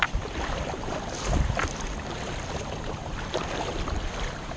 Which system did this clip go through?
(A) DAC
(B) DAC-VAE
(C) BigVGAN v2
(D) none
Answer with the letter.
C